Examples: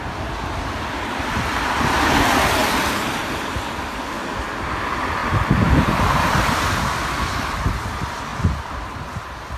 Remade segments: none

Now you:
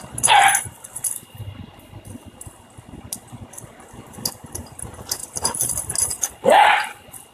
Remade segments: 5.2-6.3 (vocoder, BigVGAN v2)

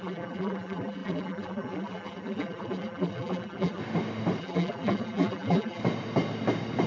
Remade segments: 0.0-3.8 (vocoder, BigVGAN v2); 4.4-5.8

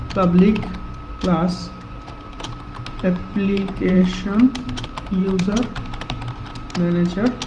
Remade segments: 1.5-4.0 (vocoder, BigVGAN v2); 5.2-6.5